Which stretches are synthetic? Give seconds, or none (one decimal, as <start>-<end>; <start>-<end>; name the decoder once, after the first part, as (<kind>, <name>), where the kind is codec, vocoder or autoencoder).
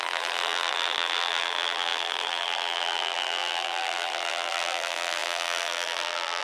0.0-6.4 (vocoder, BigVGAN v2)